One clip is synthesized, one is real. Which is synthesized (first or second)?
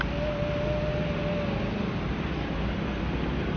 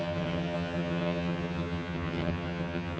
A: second